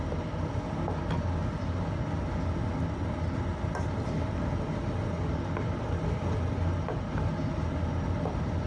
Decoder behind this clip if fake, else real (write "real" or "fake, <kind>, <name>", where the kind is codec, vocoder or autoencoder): real